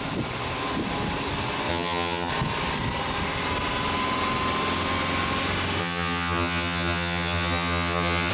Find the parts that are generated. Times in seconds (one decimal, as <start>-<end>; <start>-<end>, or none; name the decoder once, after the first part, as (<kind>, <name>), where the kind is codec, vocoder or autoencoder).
1.7-2.3 (vocoder, HiFi-GAN); 5.8-8.3